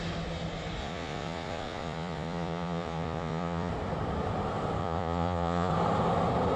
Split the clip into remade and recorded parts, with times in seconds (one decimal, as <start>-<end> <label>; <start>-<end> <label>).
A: 0.0-0.8 recorded; 0.8-3.7 remade; 3.7-4.8 recorded; 4.8-5.7 remade; 5.7-6.6 recorded